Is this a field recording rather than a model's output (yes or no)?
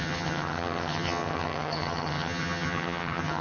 no